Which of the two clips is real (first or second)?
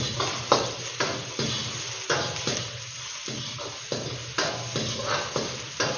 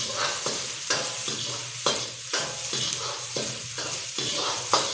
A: first